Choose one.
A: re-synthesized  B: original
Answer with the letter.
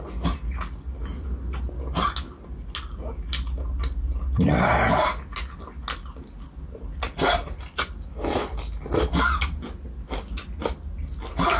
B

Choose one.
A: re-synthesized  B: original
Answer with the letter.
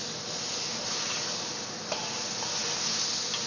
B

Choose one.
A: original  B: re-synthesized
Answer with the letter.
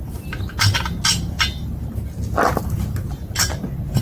A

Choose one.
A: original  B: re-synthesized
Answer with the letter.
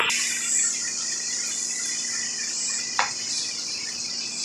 A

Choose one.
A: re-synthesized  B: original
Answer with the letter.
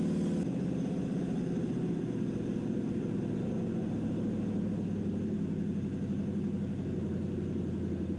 B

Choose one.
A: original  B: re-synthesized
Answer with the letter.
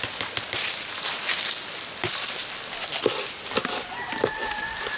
A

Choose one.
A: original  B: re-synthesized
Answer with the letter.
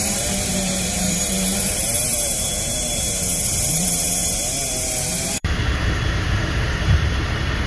B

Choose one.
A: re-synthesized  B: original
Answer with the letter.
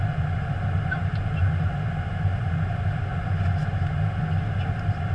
B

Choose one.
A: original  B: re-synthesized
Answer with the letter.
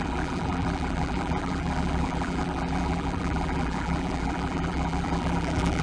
B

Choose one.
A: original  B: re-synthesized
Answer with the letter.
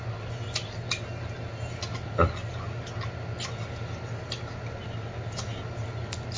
A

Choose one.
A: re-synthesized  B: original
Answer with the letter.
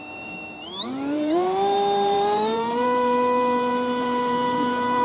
A